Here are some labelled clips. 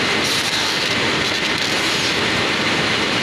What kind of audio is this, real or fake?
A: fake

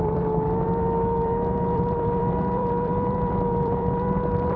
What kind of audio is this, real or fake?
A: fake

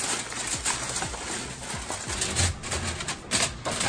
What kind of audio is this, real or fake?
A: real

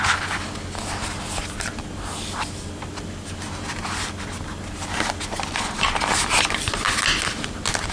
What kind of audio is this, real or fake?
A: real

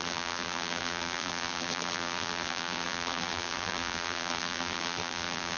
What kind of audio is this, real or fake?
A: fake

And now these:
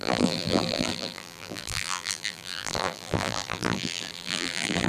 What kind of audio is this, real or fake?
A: fake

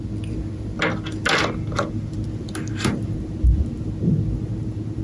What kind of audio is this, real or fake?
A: real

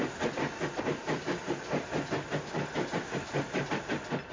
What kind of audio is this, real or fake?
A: real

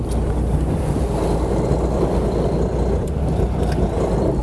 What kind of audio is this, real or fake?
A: real